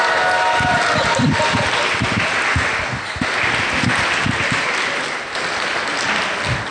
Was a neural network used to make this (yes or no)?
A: no